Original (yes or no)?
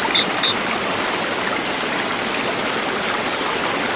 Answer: yes